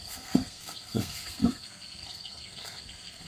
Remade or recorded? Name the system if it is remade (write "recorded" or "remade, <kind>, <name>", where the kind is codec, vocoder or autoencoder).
remade, codec, SNAC